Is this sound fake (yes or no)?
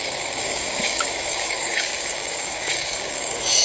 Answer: yes